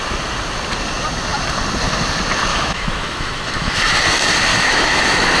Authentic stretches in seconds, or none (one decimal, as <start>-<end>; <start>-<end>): 0.0-2.5; 3.8-4.5